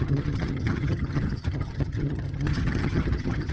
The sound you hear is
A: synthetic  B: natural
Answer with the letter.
A